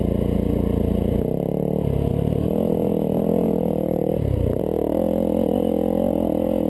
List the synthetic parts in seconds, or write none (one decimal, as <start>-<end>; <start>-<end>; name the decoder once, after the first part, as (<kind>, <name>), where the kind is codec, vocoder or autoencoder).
2.1-4.6 (vocoder, BigVGAN v2)